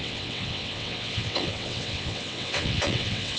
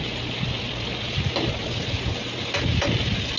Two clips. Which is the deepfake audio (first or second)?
first